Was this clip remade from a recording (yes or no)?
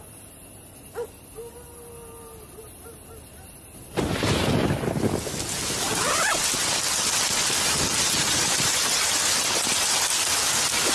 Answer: no